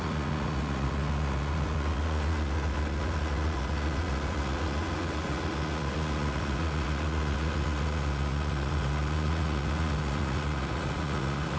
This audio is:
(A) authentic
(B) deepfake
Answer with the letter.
B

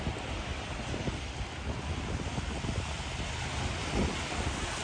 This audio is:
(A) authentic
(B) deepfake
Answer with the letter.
A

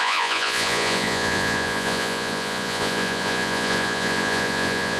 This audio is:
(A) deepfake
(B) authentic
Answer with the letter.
A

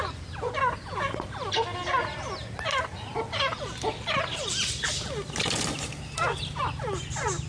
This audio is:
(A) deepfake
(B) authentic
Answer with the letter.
B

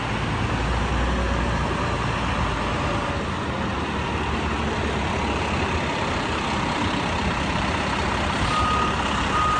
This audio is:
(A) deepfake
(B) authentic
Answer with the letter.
B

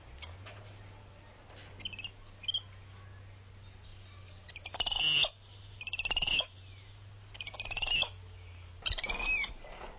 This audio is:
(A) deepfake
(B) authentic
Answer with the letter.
B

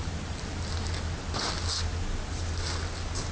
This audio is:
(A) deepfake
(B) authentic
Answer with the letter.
B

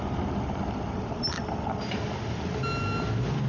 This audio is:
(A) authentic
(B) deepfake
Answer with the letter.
A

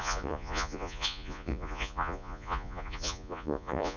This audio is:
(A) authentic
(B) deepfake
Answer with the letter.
B